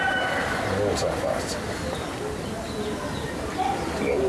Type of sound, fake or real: real